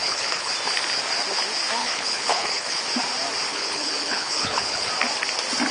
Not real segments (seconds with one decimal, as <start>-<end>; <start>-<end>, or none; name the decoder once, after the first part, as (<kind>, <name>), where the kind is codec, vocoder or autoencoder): 0.0-0.5 (codec, HILCodec); 1.8-2.8; 3.5-4.9